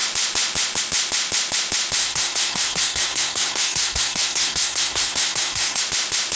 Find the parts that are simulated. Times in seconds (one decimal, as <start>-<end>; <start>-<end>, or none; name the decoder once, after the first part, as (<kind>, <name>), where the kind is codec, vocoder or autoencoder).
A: 2.0-5.8 (codec, SNAC)

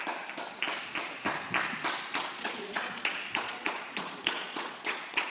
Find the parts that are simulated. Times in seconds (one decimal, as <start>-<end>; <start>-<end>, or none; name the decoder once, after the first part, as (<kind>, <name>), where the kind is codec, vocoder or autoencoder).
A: 2.1-5.3 (vocoder, Vocos)